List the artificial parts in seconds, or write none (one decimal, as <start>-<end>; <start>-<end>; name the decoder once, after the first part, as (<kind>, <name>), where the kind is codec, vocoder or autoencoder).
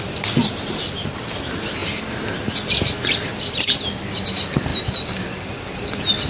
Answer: none